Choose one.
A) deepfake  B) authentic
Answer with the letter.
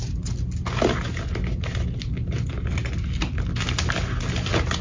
B